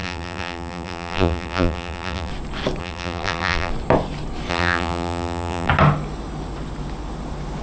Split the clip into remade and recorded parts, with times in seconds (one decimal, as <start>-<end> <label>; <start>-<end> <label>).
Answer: 0.0-2.3 remade; 2.3-2.8 recorded; 2.8-3.7 remade; 3.7-4.5 recorded; 4.5-5.7 remade; 5.7-7.6 recorded